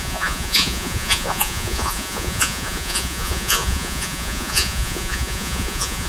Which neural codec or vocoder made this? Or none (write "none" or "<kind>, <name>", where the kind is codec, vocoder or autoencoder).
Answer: vocoder, Vocos